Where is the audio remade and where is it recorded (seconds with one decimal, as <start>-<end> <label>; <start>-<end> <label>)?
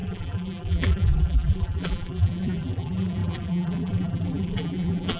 0.0-5.2 remade